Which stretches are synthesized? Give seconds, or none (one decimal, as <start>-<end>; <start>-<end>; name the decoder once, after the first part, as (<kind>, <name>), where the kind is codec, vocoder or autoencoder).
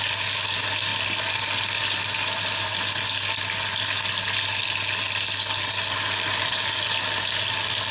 none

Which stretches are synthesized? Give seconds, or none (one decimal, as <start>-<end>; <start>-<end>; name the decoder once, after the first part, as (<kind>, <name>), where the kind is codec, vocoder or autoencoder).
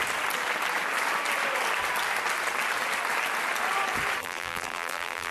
4.2-5.3 (vocoder, BigVGAN v2)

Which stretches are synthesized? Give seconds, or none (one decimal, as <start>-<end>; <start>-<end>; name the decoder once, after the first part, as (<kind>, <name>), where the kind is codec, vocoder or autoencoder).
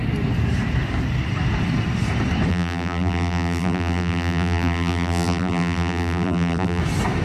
2.5-6.8 (vocoder, BigVGAN v2)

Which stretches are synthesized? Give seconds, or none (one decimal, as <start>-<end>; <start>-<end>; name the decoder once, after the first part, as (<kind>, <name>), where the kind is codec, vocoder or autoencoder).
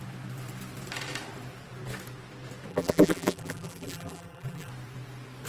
2.7-4.7 (vocoder, BigVGAN v2)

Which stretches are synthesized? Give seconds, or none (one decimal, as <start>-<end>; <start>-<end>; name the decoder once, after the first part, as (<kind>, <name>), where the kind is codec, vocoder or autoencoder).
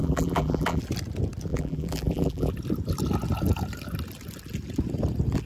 0.0-0.8 (vocoder, BigVGAN v2); 1.5-2.5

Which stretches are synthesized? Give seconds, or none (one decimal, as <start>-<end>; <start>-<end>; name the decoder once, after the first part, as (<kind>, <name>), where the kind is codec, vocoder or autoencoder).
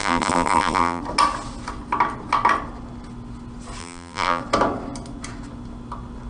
0.0-1.0 (vocoder, BigVGAN v2); 3.8-4.4